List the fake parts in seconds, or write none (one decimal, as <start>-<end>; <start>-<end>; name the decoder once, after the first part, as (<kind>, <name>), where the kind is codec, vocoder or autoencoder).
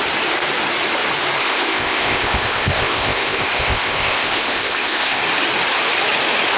1.4-5.2 (codec, ZipCodec)